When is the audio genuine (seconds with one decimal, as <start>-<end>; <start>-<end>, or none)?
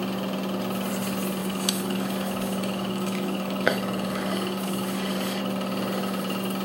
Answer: 0.0-1.4; 5.4-6.6